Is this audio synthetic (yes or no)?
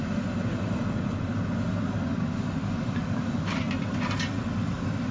no